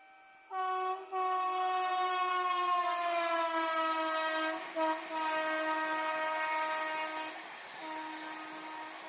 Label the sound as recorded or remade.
recorded